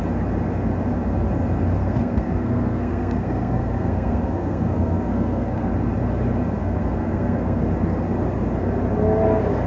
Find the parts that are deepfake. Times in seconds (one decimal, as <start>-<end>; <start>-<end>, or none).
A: 1.8-5.7; 6.6-7.6